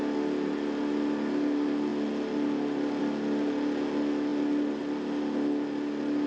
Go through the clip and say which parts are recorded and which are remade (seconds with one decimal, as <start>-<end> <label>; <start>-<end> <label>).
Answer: 0.0-6.3 recorded